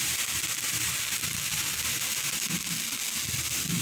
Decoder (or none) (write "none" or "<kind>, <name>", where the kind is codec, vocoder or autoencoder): none